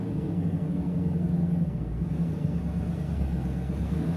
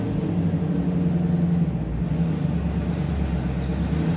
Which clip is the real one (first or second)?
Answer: second